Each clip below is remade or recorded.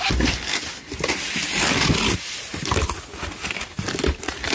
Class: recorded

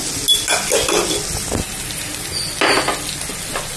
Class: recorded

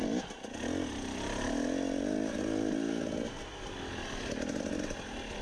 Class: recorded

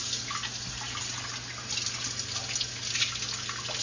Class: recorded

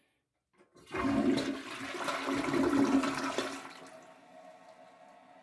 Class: recorded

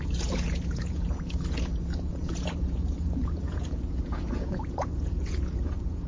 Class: remade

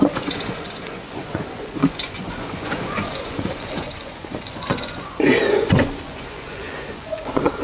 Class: remade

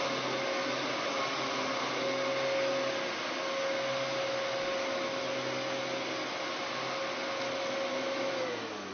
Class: recorded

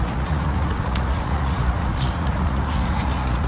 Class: remade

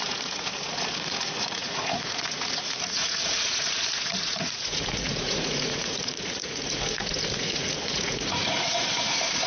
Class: remade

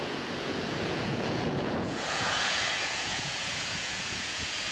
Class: remade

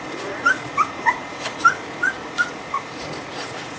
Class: remade